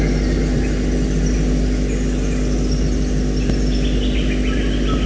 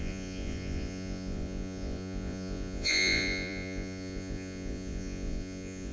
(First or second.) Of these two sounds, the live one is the first